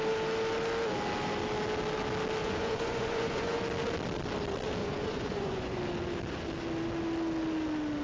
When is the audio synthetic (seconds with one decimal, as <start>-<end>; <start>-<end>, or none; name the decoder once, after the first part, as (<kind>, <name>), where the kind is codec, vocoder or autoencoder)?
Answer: 2.4-3.6 (vocoder, Vocos); 4.8-5.8